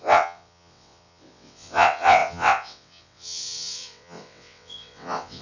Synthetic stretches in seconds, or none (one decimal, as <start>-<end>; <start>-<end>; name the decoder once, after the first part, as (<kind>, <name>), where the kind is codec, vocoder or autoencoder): 0.0-5.4 (vocoder, WaveNeXt)